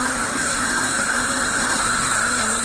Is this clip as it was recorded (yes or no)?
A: no